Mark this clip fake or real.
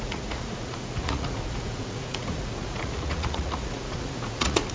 fake